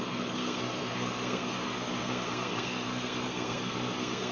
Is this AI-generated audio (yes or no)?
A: yes